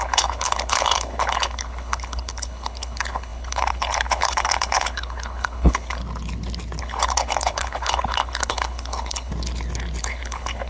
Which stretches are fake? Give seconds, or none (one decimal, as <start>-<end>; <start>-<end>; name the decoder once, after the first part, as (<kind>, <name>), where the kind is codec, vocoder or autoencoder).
0.0-6.0 (codec, HILCodec); 6.8-9.3; 10.0-10.7